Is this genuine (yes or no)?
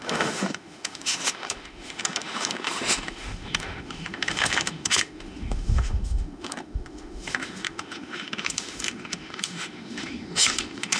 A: no